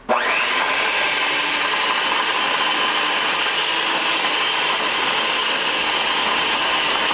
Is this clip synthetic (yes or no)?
no